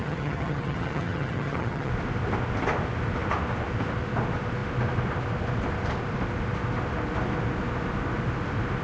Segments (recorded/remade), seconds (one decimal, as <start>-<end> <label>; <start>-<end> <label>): 0.0-1.9 remade; 1.9-8.8 recorded